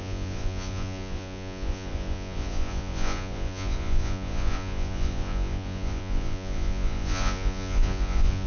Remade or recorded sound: remade